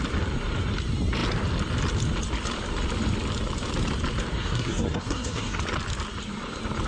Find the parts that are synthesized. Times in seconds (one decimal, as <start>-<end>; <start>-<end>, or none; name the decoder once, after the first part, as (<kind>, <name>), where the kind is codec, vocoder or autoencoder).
4.4-5.6 (codec, SNAC)